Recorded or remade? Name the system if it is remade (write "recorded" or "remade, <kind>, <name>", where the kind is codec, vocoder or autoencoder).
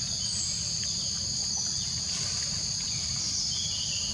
recorded